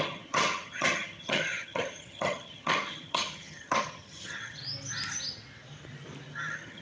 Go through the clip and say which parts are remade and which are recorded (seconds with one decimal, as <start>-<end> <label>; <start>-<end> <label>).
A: 0.0-4.6 remade; 4.6-6.3 recorded; 6.3-6.8 remade